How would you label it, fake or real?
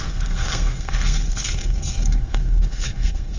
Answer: fake